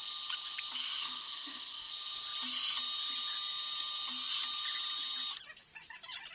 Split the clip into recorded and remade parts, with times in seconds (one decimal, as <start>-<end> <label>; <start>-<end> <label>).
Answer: 0.0-1.0 recorded; 1.0-1.9 remade; 1.9-6.3 recorded